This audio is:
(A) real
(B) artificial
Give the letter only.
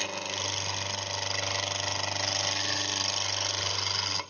A